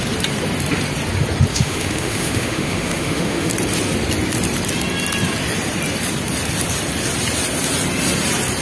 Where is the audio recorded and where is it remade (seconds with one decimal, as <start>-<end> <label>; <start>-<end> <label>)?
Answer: 0.0-1.5 recorded; 1.5-3.5 remade; 3.5-8.6 recorded